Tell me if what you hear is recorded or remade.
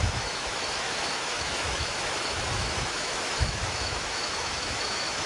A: remade